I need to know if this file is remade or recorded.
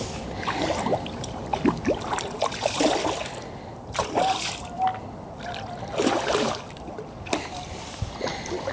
recorded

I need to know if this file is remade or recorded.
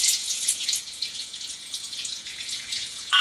remade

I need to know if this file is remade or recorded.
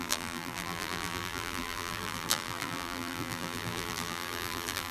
remade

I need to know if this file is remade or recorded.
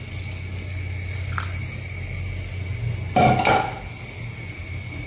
recorded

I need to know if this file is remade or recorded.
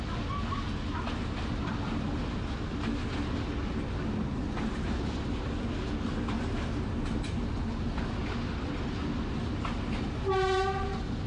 recorded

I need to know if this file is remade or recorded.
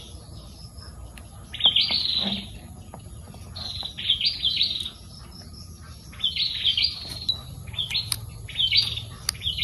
recorded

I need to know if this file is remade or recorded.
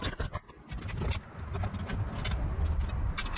recorded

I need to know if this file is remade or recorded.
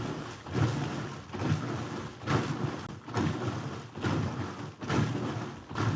recorded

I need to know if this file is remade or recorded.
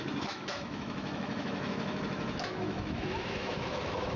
remade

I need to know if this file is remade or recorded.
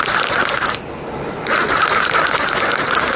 recorded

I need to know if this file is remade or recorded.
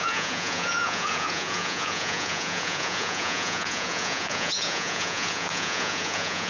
remade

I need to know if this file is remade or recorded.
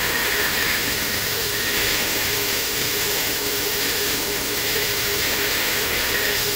remade